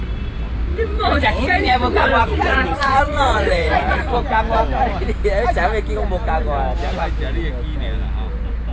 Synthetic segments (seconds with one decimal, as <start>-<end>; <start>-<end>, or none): 0.7-4.1